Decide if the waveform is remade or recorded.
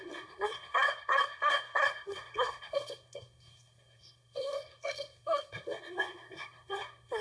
remade